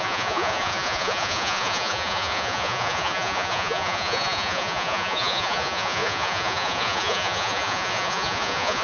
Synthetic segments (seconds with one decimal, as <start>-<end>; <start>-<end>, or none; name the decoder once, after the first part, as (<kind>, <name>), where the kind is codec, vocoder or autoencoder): 0.0-8.8 (vocoder, Vocos)